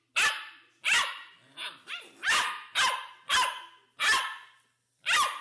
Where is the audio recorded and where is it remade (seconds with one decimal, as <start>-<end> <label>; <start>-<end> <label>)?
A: 0.0-5.4 recorded